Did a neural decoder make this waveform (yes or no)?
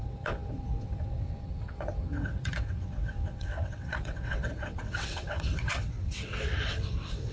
yes